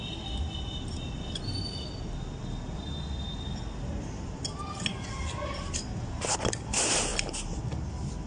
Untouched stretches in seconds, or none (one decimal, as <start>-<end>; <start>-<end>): 0.0-8.3